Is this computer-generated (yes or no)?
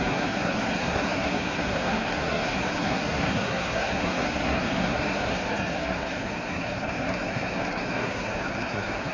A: yes